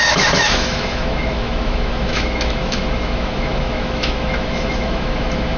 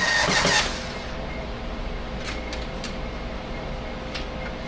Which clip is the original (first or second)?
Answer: second